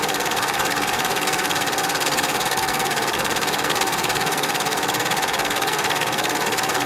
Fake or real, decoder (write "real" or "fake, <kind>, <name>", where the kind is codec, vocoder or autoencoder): fake, codec, SNAC